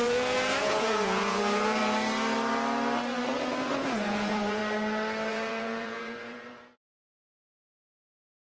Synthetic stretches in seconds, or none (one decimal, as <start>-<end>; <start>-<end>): 0.0-1.8; 3.4-4.6; 5.3-8.5